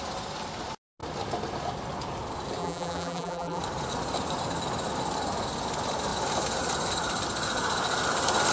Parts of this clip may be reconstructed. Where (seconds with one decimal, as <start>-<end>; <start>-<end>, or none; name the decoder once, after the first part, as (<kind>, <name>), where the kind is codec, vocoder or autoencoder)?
2.6-3.6 (vocoder, BigVGAN v2)